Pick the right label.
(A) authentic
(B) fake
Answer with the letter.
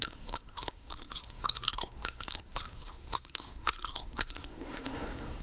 B